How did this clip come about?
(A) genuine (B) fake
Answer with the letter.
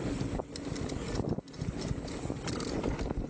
A